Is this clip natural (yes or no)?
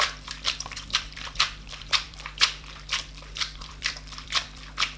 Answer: no